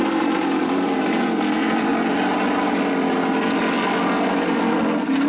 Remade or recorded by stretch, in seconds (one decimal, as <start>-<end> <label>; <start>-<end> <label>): 0.0-1.9 remade; 1.9-5.3 recorded